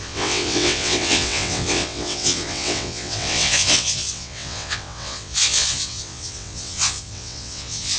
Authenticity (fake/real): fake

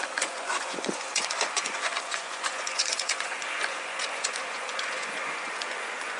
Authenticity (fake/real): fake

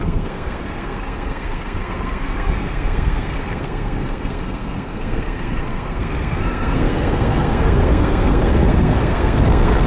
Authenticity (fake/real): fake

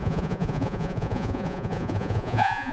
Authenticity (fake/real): fake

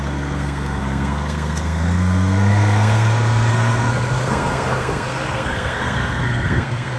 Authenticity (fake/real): fake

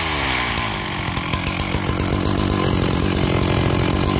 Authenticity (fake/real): real